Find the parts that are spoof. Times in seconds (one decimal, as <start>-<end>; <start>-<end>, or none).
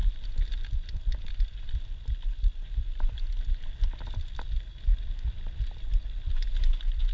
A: none